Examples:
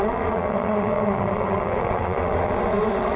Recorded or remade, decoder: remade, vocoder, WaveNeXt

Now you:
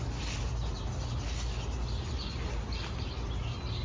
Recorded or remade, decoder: recorded